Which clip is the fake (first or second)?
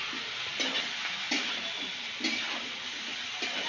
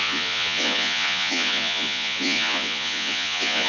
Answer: second